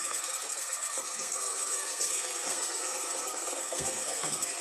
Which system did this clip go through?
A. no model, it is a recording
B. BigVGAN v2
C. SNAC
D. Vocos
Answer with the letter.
C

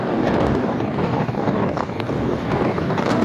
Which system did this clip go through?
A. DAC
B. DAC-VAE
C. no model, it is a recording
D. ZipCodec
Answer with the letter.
A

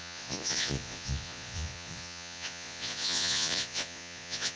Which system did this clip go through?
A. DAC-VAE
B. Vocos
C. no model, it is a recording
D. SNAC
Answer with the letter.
B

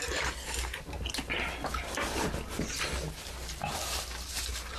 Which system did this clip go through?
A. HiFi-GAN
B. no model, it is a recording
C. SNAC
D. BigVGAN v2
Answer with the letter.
B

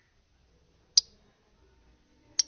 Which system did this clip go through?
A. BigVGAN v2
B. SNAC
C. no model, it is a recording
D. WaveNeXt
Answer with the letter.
C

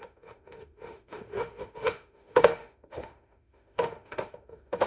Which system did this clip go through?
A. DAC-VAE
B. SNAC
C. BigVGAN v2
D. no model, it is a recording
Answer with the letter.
A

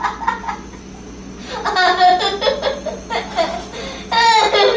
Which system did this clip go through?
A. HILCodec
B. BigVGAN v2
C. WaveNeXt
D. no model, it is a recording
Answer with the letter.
D